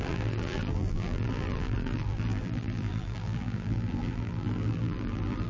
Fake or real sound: fake